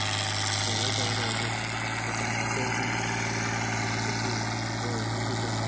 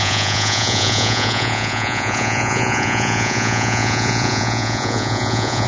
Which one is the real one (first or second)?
first